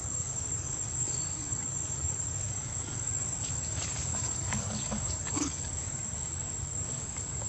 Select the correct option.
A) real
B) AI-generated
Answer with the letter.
B